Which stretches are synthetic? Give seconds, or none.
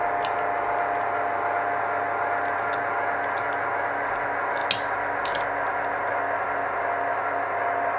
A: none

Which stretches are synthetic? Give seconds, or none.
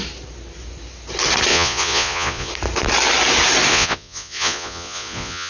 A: 1.5-2.5; 3.7-5.5